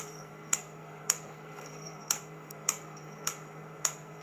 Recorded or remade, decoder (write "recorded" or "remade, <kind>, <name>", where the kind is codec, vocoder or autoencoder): remade, codec, SNAC